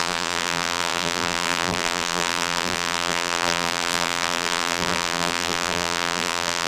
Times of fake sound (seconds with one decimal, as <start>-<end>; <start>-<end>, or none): 0.0-6.7